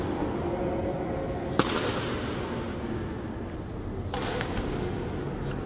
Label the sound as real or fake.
real